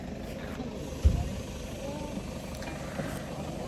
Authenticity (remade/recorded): recorded